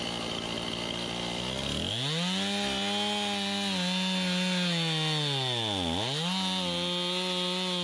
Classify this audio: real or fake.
real